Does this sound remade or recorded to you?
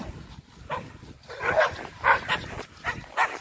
recorded